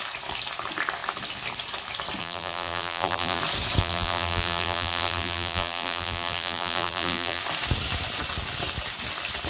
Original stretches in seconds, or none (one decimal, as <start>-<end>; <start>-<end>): 0.0-2.2; 3.4-3.8; 7.4-9.5